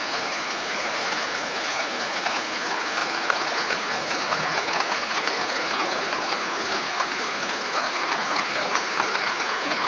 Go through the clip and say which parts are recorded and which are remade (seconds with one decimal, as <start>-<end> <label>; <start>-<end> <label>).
0.0-9.9 remade